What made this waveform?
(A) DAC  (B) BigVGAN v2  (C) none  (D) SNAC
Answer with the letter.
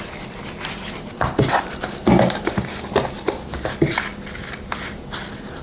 C